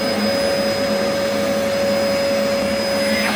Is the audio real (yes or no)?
yes